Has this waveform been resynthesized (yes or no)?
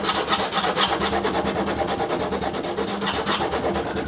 no